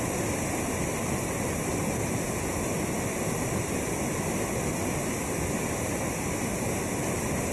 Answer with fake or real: real